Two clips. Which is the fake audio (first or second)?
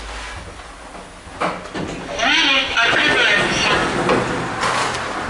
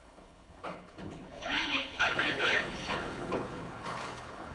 second